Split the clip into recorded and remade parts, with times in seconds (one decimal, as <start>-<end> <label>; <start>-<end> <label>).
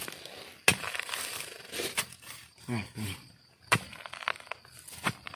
0.0-0.7 recorded; 0.7-3.9 remade; 3.9-5.4 recorded